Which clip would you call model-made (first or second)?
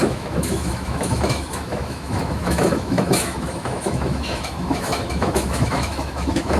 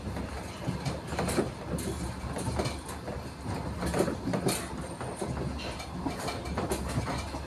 first